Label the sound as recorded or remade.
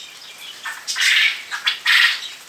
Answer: recorded